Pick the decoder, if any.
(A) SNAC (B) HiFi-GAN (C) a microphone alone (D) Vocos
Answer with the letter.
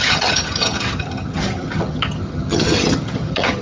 B